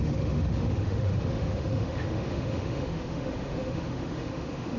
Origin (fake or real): fake